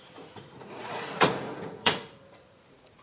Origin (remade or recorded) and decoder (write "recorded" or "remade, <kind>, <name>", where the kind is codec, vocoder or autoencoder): remade, vocoder, Vocos